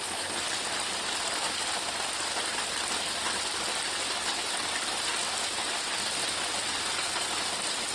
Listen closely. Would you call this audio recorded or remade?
recorded